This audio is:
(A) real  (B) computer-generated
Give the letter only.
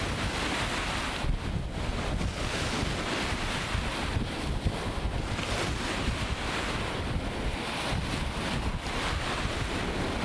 A